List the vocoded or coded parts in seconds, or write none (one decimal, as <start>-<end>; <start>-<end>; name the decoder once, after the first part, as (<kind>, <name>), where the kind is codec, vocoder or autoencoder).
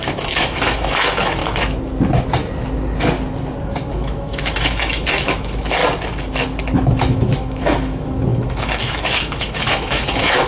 0.0-1.4 (autoencoder, DAC-VAE); 3.9-5.8; 6.6-10.5